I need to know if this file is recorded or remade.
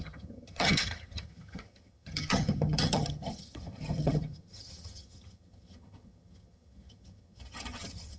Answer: remade